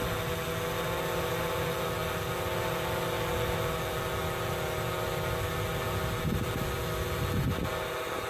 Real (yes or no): yes